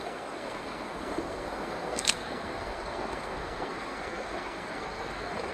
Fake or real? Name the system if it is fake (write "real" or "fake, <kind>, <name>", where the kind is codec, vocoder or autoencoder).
fake, codec, SNAC